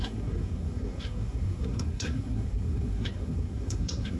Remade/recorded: remade